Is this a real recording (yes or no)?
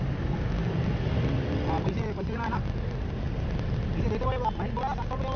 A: yes